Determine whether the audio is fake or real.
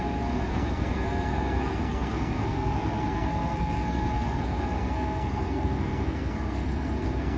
fake